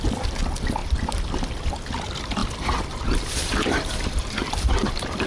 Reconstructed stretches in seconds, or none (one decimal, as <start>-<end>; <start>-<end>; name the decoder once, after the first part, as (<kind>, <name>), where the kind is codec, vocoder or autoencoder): none